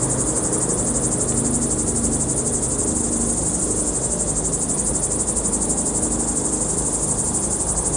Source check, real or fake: real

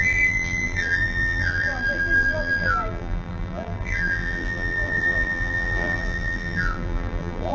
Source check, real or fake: fake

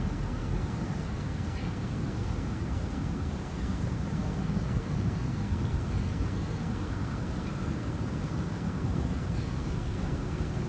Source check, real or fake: fake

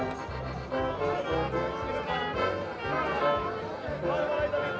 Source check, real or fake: real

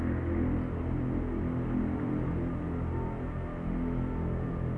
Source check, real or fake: real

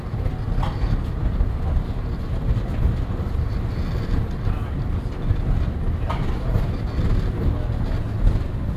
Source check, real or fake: real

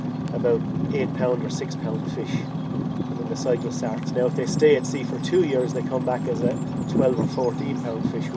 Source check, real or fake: real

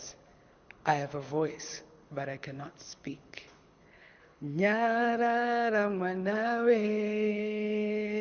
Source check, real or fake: fake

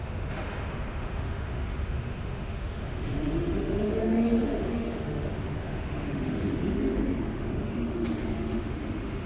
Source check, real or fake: fake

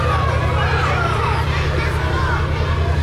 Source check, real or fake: real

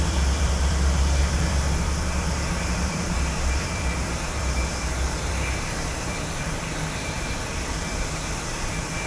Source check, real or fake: fake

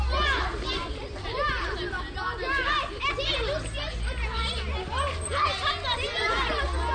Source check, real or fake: real